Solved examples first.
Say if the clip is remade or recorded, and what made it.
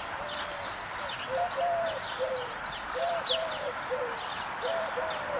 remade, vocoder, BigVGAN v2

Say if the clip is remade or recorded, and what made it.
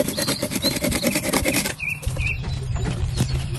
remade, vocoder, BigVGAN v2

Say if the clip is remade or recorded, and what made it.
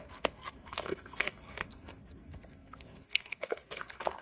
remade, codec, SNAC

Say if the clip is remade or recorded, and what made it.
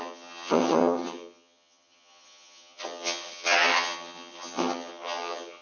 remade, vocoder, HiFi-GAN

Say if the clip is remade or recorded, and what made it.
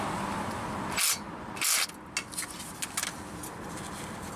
recorded